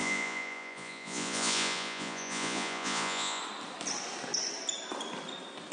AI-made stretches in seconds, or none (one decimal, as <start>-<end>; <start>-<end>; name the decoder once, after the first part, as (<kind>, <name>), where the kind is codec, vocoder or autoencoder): 0.0-3.4 (vocoder, Vocos)